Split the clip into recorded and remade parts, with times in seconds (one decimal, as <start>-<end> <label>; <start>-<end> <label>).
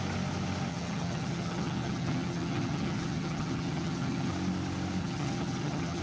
0.0-0.7 recorded; 0.7-4.3 remade; 4.3-5.0 recorded; 5.0-6.0 remade